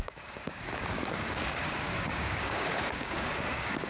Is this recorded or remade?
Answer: remade